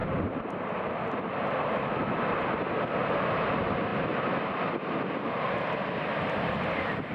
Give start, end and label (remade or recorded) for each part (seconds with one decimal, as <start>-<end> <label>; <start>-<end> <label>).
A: 0.0-0.9 remade; 0.9-7.1 recorded